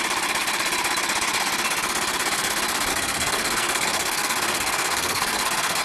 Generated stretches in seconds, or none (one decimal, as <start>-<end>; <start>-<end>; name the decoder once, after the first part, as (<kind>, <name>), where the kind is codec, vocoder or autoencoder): 2.9-5.8 (codec, SNAC)